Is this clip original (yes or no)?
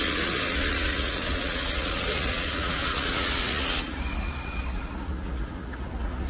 no